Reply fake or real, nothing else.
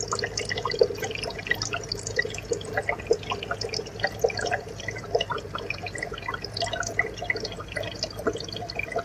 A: real